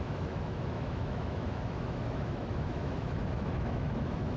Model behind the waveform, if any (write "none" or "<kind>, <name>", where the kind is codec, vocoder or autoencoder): autoencoder, DAC-VAE